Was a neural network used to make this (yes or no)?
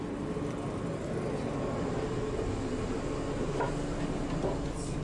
no